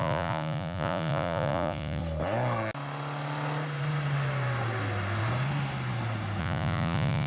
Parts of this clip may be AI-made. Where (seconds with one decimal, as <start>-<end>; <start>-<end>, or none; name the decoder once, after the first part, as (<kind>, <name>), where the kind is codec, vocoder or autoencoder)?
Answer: 0.0-2.0 (vocoder, Vocos); 6.4-7.3